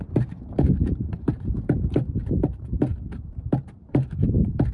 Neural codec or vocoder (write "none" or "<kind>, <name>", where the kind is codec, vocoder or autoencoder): vocoder, BigVGAN v2